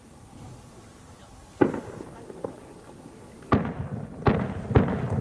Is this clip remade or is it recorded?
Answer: recorded